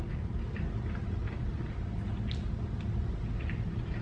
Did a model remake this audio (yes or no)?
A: no